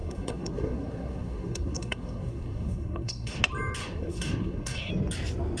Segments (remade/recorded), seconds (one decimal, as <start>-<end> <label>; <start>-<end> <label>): 0.0-3.4 remade; 3.4-3.8 recorded; 3.8-4.9 remade; 4.9-5.6 recorded